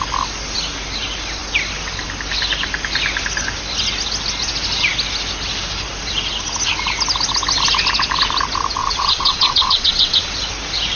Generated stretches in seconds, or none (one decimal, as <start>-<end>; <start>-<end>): 8.8-10.3